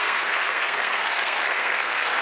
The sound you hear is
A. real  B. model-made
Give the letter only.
B